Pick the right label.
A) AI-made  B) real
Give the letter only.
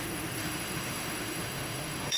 A